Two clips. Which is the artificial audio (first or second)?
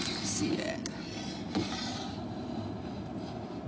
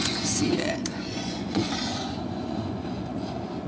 second